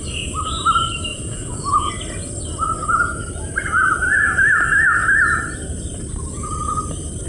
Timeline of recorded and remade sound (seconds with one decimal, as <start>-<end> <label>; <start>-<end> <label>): 0.0-1.1 recorded; 1.1-1.9 remade; 1.9-7.3 recorded